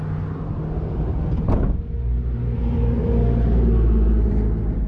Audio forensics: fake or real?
real